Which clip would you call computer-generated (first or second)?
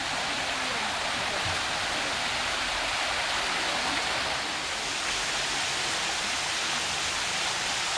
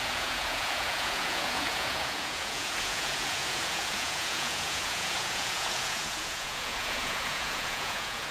second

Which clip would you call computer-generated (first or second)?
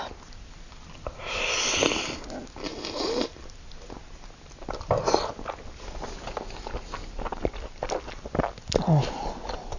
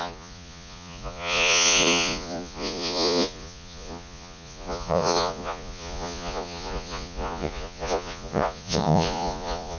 second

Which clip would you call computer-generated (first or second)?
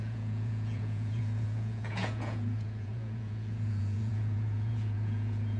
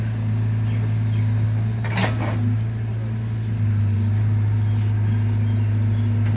first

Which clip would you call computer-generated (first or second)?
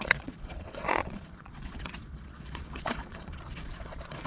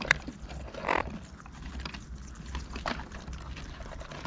first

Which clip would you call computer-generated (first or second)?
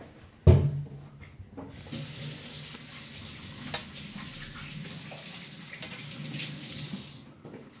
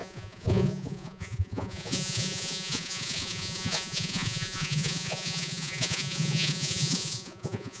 second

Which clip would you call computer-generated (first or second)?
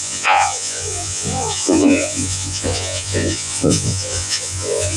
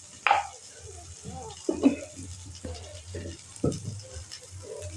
first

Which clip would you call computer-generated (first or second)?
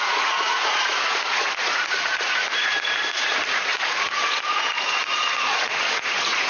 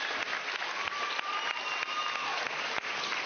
first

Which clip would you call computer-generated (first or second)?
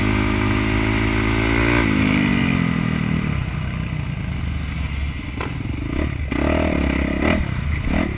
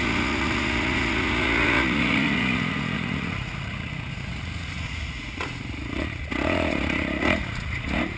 second